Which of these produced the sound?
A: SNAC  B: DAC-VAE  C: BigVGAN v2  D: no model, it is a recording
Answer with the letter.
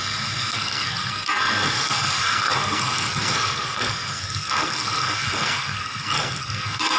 A